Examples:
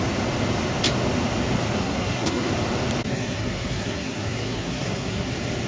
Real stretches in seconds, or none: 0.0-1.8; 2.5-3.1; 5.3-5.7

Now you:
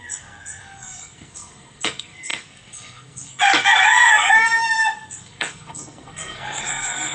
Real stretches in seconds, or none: none